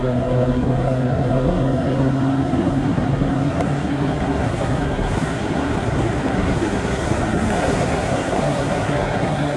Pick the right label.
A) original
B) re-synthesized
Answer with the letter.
B